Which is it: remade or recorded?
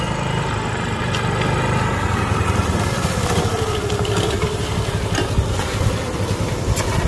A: recorded